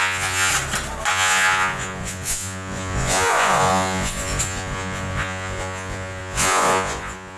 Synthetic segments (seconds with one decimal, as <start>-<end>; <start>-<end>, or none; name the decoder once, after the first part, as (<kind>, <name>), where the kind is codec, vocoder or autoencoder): 0.0-0.5 (vocoder, Vocos); 1.1-7.4